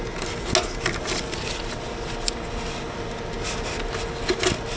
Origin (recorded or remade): recorded